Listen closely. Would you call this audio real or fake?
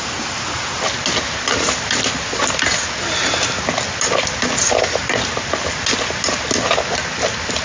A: real